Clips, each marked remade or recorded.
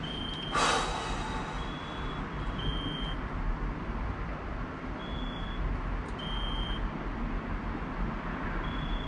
recorded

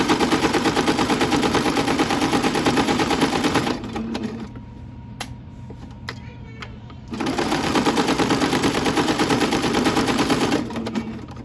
remade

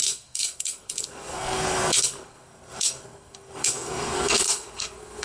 remade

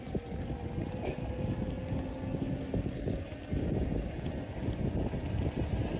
recorded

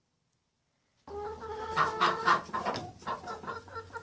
recorded